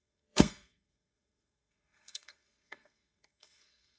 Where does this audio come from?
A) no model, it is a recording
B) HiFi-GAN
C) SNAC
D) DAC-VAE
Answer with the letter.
C